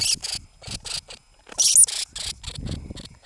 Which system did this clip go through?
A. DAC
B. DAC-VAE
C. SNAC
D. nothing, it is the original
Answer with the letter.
D